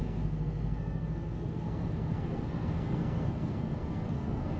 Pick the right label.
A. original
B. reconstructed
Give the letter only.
B